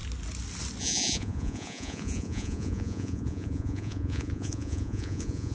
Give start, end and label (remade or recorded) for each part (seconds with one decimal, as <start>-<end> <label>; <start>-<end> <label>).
0.0-0.8 recorded; 0.8-5.5 remade

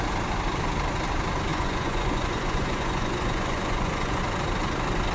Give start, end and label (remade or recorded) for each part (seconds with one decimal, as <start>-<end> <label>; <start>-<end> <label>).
0.0-1.5 recorded; 1.5-4.2 remade; 4.2-5.1 recorded

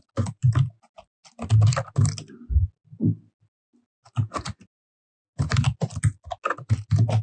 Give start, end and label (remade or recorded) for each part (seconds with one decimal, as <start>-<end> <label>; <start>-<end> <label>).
0.0-7.2 recorded

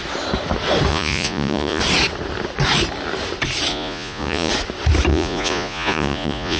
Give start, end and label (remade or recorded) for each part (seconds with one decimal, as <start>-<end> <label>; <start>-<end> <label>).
0.0-0.9 recorded; 0.9-1.8 remade; 1.8-3.7 recorded; 3.7-4.5 remade; 4.5-5.1 recorded; 5.1-6.6 remade

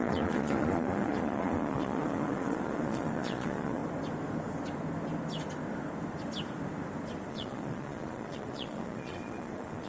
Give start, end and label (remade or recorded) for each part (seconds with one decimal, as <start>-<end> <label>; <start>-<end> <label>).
0.0-3.8 remade; 3.8-7.3 recorded; 7.3-9.9 remade

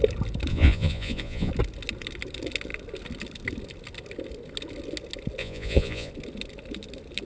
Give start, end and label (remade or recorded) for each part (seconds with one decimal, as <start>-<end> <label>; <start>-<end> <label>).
0.0-0.5 recorded; 0.5-1.5 remade; 1.5-5.4 recorded; 5.4-6.1 remade; 6.1-7.2 recorded

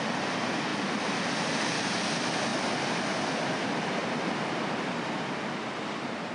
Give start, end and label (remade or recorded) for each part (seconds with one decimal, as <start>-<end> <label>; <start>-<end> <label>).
0.0-6.3 recorded

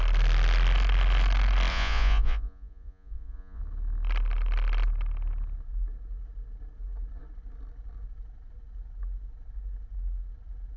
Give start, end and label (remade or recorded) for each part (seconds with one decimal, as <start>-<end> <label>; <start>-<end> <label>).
0.0-1.7 recorded; 1.7-3.6 remade; 3.6-10.8 recorded